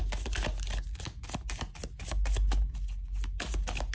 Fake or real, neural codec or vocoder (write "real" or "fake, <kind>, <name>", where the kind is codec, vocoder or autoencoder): real